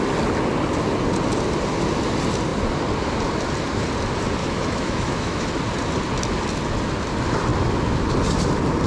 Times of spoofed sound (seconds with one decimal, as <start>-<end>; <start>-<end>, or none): 4.4-5.5